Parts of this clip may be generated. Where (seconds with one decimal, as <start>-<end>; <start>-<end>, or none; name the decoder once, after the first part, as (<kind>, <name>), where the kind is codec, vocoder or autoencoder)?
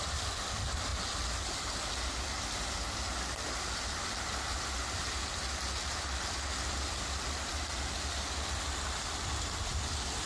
none